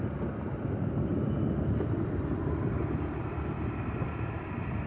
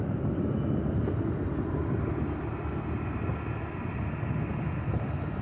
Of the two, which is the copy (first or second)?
first